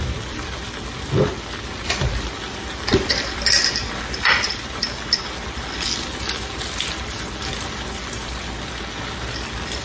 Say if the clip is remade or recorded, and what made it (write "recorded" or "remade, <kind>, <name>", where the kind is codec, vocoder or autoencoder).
recorded